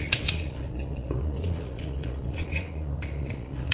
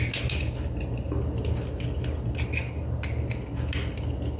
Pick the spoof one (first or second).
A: first